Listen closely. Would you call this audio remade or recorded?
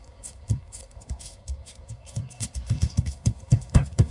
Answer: remade